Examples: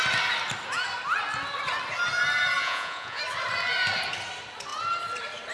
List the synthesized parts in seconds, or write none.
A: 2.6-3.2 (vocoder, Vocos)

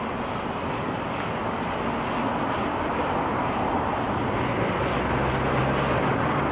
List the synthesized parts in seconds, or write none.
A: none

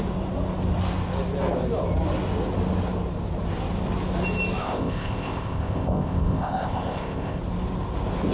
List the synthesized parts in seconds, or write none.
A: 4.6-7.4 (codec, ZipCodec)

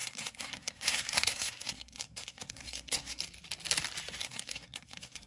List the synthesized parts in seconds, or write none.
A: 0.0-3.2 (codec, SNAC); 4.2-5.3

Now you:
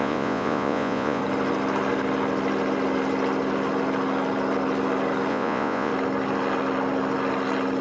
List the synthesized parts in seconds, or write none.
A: 0.0-1.2 (vocoder, Vocos); 5.3-5.9

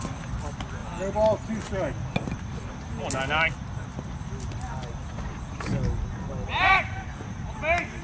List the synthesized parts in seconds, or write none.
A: none

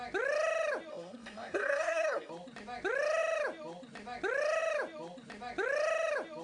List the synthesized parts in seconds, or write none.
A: 0.9-2.3 (codec, SNAC)

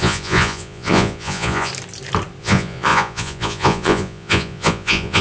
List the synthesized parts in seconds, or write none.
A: 0.0-1.7 (vocoder, Vocos); 2.4-5.2